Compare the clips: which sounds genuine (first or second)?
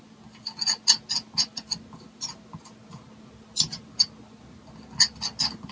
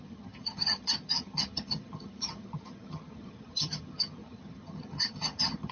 first